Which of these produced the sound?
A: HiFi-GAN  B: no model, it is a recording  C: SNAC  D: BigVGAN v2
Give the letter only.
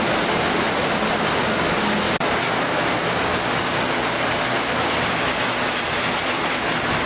B